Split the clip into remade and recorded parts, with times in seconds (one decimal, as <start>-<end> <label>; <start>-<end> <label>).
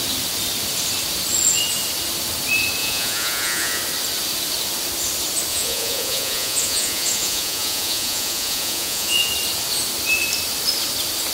0.0-2.8 recorded; 2.8-3.8 remade; 3.8-5.5 recorded; 5.5-9.3 remade; 9.3-11.3 recorded